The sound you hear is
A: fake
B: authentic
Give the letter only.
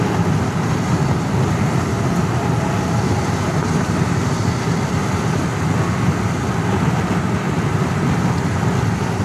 B